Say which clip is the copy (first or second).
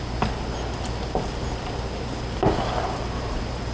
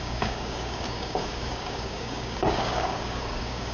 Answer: second